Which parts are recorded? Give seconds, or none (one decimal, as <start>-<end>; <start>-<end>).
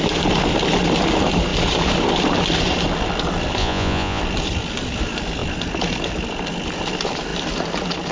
0.0-3.6; 4.2-8.1